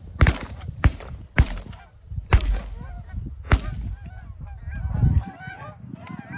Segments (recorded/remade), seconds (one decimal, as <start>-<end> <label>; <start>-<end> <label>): 0.0-2.5 remade; 2.5-6.4 recorded